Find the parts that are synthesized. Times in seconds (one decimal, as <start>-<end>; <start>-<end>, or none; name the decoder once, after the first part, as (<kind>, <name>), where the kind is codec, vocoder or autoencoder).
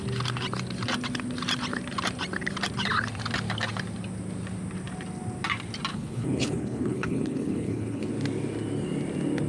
5.9-8.1 (codec, HILCodec)